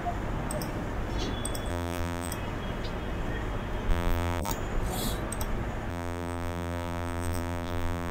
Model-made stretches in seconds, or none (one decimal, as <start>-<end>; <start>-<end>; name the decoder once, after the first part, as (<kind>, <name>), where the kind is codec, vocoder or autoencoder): 1.7-2.3 (vocoder, BigVGAN v2); 3.9-4.5; 5.9-8.1